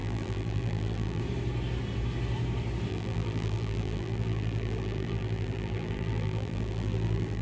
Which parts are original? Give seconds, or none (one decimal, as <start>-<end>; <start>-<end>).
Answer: 1.2-2.9